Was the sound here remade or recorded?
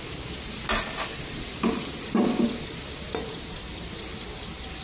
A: recorded